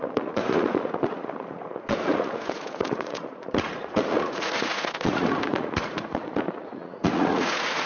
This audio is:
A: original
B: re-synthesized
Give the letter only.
B